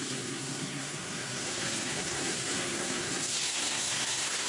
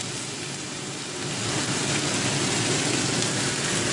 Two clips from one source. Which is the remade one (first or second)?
first